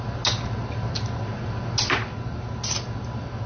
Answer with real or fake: real